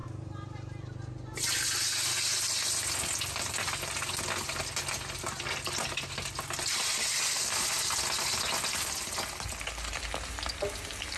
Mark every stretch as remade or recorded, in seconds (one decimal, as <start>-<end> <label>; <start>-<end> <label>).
0.0-11.2 recorded